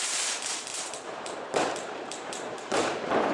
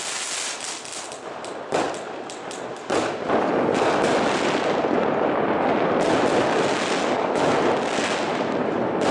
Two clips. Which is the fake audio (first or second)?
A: first